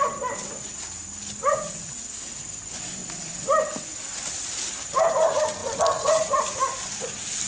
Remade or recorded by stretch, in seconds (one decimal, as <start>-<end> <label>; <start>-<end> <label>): 0.0-7.5 recorded